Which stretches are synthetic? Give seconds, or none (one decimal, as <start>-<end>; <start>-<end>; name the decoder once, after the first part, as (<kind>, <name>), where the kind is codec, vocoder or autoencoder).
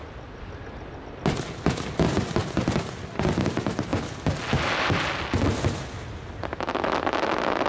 none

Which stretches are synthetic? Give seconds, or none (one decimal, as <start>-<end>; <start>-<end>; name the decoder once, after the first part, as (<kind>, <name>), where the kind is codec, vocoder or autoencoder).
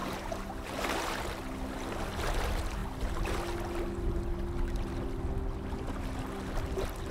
0.0-0.5 (vocoder, BigVGAN v2)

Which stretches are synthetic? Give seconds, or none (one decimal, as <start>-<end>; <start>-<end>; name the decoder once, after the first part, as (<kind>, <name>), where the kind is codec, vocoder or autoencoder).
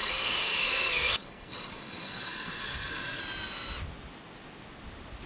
0.0-3.2 (codec, SNAC)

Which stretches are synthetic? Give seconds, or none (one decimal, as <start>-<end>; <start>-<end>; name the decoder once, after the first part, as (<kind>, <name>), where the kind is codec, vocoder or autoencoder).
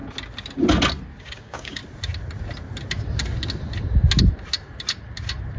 1.2-1.8 (codec, DAC)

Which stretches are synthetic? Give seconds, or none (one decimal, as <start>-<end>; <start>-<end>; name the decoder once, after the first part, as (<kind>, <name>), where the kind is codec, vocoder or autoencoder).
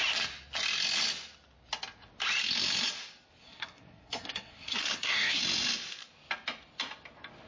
3.4-5.4 (codec, SNAC)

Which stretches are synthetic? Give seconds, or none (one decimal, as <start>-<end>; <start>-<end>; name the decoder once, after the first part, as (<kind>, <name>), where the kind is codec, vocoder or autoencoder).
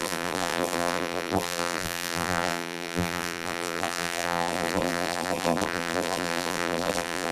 0.0-7.3 (vocoder, BigVGAN v2)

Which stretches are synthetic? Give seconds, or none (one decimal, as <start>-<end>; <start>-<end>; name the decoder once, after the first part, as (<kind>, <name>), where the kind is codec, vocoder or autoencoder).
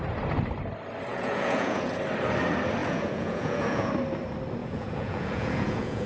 1.1-2.0 (vocoder, Vocos); 2.8-3.9; 4.6-6.1